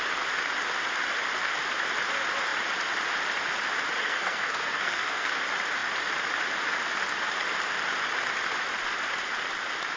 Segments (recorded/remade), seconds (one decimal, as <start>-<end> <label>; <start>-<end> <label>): 0.0-4.0 recorded; 4.0-5.3 remade; 5.3-10.0 recorded